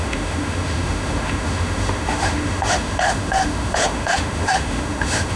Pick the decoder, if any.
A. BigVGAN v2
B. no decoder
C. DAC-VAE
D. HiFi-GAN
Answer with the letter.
C